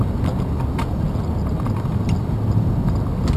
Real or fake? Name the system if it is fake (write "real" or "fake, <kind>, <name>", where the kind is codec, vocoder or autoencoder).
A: real